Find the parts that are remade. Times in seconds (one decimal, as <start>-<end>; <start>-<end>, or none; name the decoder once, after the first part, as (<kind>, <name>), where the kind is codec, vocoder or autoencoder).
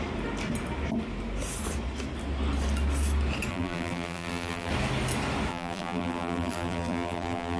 3.5-4.7 (vocoder, BigVGAN v2); 5.5-7.6